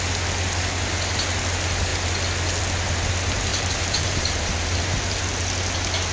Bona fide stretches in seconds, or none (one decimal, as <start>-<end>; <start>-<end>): 0.0-3.5; 4.8-6.1